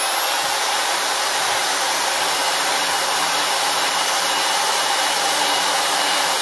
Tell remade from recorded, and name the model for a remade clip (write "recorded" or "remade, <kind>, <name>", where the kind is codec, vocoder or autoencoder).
remade, vocoder, BigVGAN v2